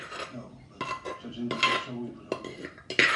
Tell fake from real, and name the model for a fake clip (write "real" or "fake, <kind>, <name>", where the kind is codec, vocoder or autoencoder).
real